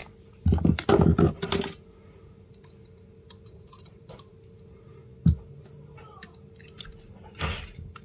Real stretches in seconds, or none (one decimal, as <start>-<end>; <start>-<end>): 0.0-3.5; 4.3-7.6